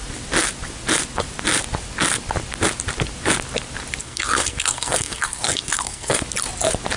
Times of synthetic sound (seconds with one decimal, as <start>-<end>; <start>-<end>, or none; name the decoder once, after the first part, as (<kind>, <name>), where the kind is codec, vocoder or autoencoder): 4.0-6.2 (codec, SNAC)